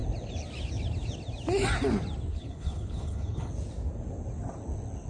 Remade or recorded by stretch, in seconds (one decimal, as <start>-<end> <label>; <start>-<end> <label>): 0.0-2.3 recorded; 2.3-3.5 remade; 3.5-5.1 recorded